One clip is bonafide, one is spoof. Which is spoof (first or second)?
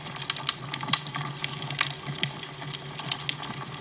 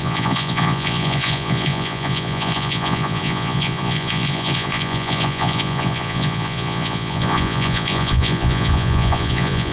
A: second